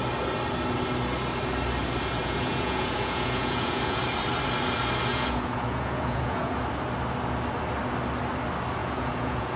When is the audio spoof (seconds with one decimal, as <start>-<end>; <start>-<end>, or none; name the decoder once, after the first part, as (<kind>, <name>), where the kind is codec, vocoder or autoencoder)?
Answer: 2.2-4.0 (vocoder, Vocos); 5.1-6.6; 8.8-9.6